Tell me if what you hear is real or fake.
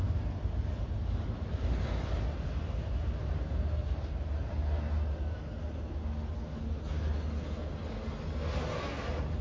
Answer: real